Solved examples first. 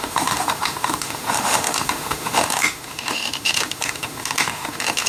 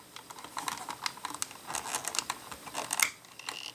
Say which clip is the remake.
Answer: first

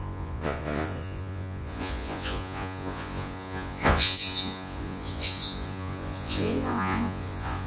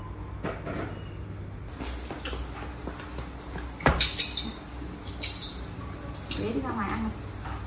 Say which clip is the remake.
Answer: first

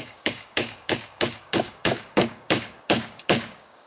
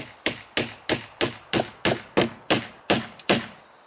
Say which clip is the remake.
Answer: first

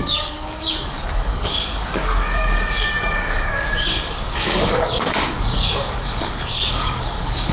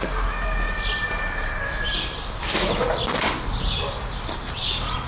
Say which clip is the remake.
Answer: first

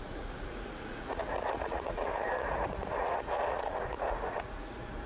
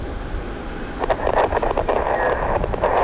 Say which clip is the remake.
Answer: first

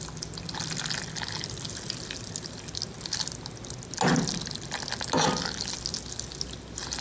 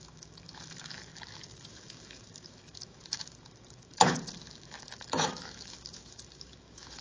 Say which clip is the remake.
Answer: second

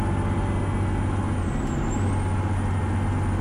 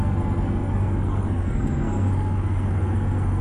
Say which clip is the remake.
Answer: second